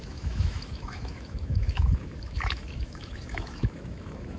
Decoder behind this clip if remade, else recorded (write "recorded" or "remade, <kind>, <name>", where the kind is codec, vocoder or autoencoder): remade, autoencoder, DAC-VAE